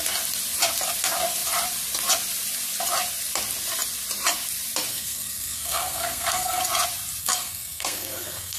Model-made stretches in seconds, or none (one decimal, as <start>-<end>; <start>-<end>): 4.9-6.6; 7.2-8.6